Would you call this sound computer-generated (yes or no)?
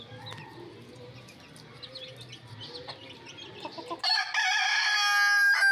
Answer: no